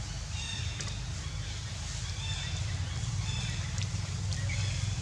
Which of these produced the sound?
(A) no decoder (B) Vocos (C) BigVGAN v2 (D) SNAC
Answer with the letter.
A